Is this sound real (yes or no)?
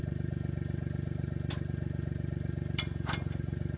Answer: yes